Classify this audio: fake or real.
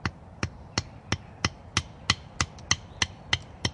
real